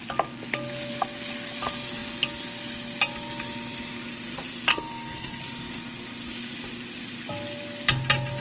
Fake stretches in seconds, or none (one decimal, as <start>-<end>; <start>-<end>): 4.7-5.4